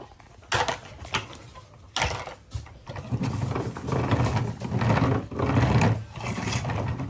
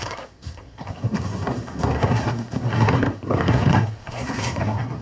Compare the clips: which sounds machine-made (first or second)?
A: second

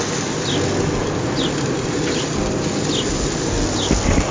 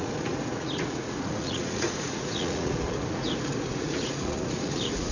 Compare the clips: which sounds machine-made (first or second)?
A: second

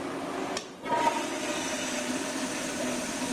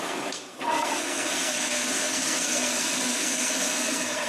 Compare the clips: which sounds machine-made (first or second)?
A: second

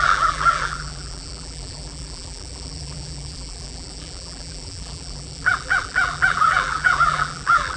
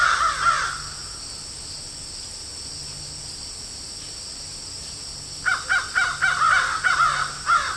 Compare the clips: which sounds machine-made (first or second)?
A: first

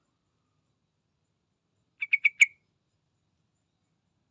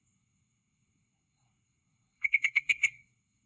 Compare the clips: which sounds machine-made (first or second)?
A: second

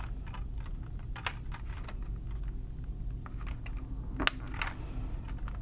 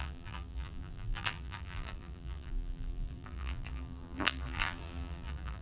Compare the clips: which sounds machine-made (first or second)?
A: second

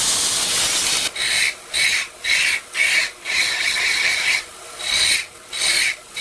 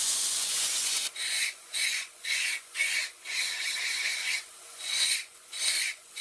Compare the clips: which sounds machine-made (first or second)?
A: second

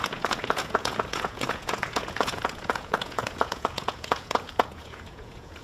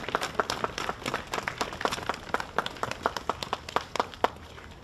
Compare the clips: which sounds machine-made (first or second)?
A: first